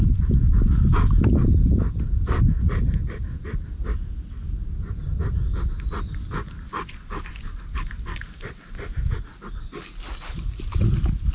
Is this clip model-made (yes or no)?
no